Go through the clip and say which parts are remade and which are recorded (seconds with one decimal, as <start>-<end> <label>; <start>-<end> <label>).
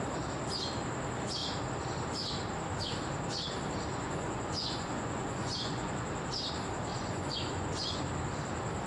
0.0-3.9 recorded; 3.9-5.9 remade; 5.9-6.9 recorded; 6.9-8.0 remade; 8.0-8.9 recorded